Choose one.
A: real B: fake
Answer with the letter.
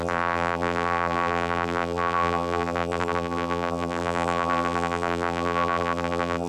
B